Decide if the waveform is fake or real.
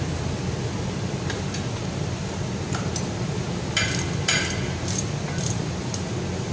real